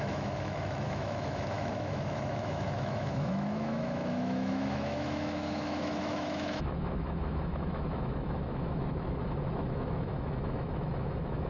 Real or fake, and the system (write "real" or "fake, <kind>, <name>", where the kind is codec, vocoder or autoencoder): fake, autoencoder, DAC-VAE